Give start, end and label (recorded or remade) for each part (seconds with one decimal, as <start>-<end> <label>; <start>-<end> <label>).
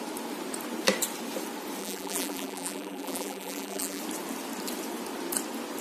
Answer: 0.0-1.8 recorded; 1.8-4.0 remade; 4.0-5.8 recorded